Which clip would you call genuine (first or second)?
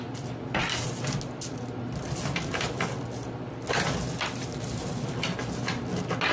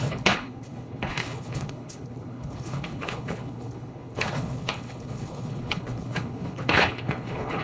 first